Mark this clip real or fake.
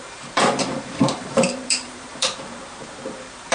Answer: fake